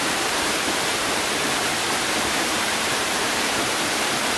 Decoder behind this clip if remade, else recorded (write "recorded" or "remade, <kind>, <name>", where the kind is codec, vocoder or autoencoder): remade, vocoder, BigVGAN v2